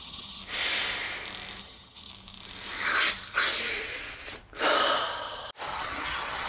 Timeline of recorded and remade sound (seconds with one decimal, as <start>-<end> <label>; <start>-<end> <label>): 0.0-0.4 remade; 0.4-1.6 recorded; 1.6-2.1 remade; 2.1-5.7 recorded; 5.7-6.5 remade

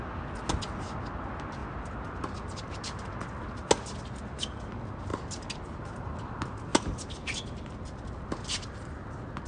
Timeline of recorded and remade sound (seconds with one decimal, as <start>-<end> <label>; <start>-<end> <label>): 0.0-5.1 recorded; 5.1-6.0 remade; 6.0-9.5 recorded

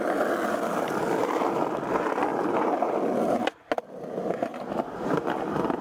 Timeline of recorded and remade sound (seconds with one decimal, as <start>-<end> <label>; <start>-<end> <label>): 0.0-2.3 recorded; 2.3-3.0 remade; 3.0-4.5 recorded; 4.5-5.8 remade